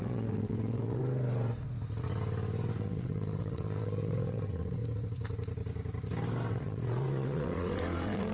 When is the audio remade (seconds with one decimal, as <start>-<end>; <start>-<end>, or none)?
0.0-1.0; 2.8-4.8; 6.5-8.3